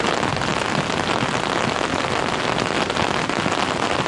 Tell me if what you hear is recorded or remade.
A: recorded